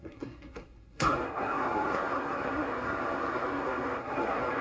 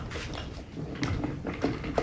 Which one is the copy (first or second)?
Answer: first